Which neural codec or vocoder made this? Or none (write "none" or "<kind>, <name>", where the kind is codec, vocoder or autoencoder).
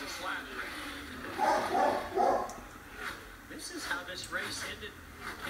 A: vocoder, BigVGAN v2